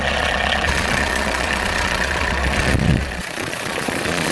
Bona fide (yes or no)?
no